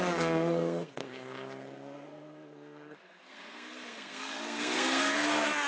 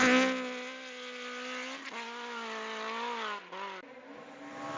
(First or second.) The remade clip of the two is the first